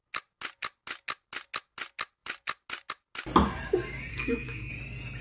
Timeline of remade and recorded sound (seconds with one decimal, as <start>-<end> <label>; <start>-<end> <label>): 0.0-4.1 recorded; 4.1-4.7 remade; 4.7-5.2 recorded